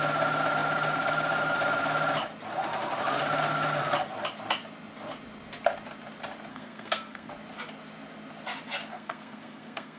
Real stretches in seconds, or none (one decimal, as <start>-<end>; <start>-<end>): 0.0-6.5; 7.3-8.9